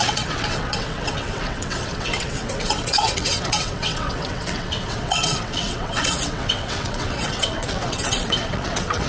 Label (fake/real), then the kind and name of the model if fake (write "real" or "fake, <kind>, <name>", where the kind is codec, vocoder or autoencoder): fake, vocoder, WaveNeXt